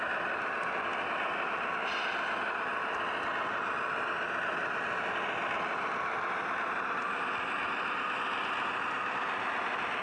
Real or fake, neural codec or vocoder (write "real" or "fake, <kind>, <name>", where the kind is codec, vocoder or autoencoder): real